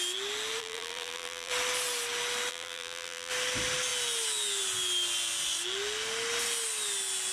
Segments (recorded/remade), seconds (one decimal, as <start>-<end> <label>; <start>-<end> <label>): 0.0-0.6 recorded; 0.6-1.5 remade; 1.5-2.5 recorded; 2.5-3.3 remade; 3.3-7.3 recorded